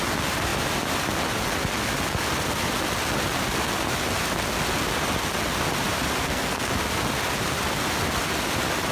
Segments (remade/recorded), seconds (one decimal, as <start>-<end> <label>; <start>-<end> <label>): 0.0-6.2 recorded; 6.2-6.7 remade; 6.7-8.9 recorded